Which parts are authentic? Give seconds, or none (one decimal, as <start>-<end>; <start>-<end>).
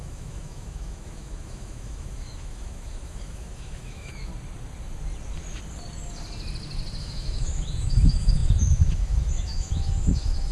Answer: 4.3-7.0